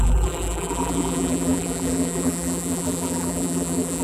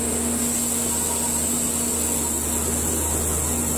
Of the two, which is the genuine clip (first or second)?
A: second